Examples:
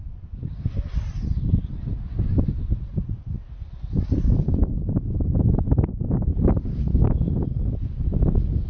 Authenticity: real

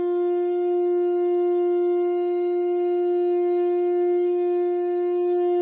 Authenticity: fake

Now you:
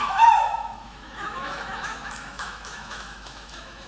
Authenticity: fake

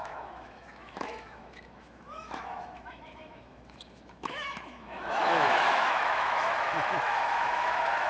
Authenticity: fake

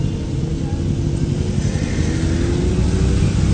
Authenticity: real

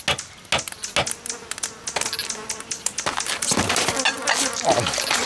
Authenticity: real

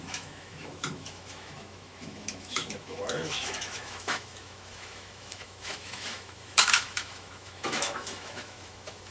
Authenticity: fake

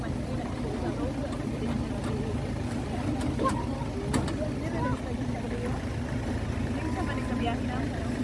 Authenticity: real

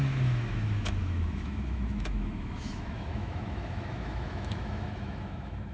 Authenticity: fake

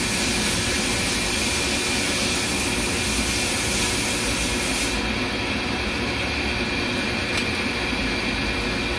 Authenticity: real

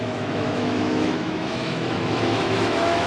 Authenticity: fake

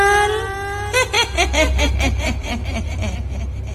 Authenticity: real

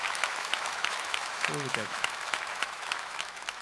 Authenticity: fake